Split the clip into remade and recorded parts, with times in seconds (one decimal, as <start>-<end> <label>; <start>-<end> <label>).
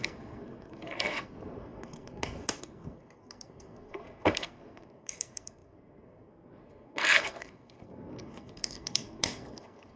0.0-10.0 remade